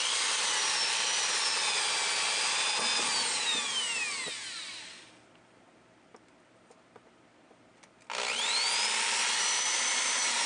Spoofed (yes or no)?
no